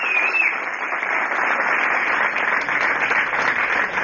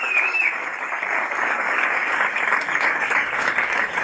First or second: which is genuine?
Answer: first